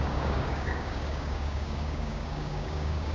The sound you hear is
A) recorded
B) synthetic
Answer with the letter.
B